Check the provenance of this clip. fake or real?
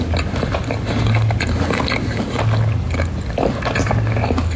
real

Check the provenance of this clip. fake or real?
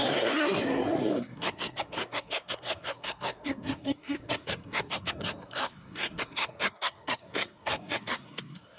fake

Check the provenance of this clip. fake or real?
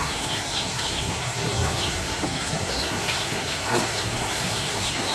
fake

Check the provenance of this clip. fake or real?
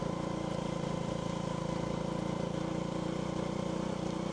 real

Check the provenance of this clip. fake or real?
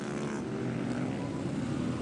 real